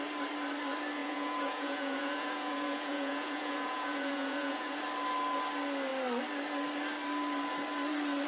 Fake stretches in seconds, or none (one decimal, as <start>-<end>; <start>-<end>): 1.0-4.8